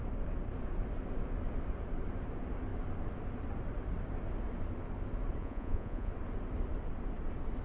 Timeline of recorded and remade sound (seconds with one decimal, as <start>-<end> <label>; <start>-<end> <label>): 0.0-5.4 recorded; 5.4-6.1 remade; 6.1-7.6 recorded